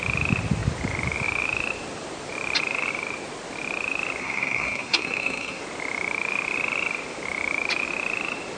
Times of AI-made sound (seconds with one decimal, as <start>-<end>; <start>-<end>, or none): 4.2-5.6